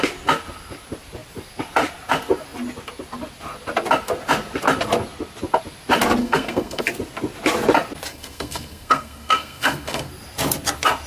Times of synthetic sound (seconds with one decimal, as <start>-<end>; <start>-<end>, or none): 6.2-6.8; 8.1-10.1